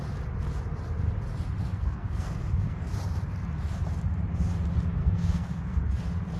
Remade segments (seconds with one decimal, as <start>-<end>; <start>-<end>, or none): 1.6-2.9; 5.0-6.0